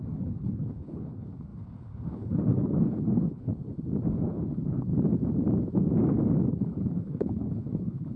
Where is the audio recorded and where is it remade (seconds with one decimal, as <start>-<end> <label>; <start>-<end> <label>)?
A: 0.0-3.5 remade; 3.5-4.1 recorded; 4.1-4.9 remade; 4.9-6.5 recorded; 6.5-8.2 remade

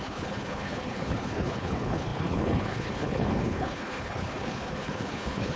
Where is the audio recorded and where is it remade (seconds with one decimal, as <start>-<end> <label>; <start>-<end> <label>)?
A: 0.0-5.6 remade

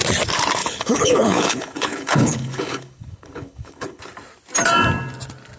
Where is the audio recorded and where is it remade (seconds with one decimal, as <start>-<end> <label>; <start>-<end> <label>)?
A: 0.0-0.6 recorded; 0.6-4.0 remade; 4.0-5.6 recorded